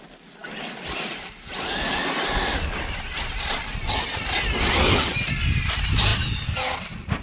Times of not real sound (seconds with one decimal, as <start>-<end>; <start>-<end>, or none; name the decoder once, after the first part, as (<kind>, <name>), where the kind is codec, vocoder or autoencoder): none